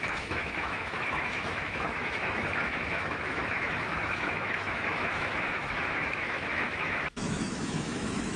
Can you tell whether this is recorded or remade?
remade